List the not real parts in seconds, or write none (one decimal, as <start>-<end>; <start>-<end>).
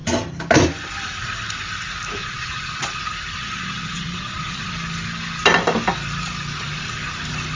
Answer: 2.2-3.0; 3.4-4.7